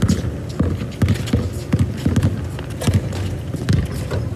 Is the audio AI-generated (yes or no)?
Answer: no